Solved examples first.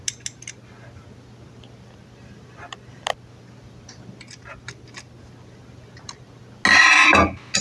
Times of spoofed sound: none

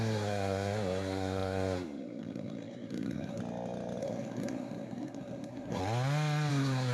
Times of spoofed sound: 0.0-3.4 (codec, SNAC); 4.0-5.8; 6.5-6.9